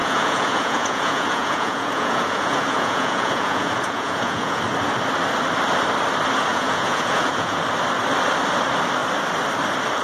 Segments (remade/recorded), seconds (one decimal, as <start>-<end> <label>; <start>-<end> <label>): 0.0-4.6 remade; 4.6-6.5 recorded; 6.5-7.6 remade; 7.6-10.0 recorded